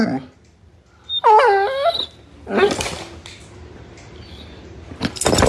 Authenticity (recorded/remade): recorded